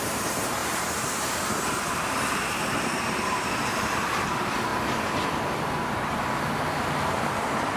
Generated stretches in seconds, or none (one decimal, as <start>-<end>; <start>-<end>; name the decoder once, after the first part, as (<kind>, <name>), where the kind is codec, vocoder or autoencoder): 0.0-4.7 (vocoder, BigVGAN v2); 6.9-7.8